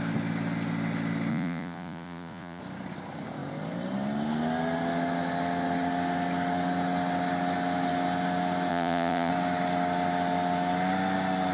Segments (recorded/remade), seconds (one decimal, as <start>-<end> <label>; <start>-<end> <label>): 0.0-1.3 recorded; 1.3-2.6 remade; 2.6-8.7 recorded; 8.7-9.3 remade; 9.3-11.5 recorded